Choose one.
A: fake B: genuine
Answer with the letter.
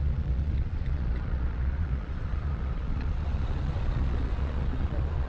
A